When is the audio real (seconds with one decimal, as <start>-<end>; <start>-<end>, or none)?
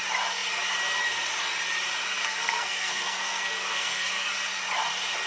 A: 0.0-2.2; 4.3-5.3